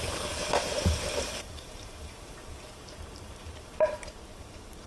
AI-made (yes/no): yes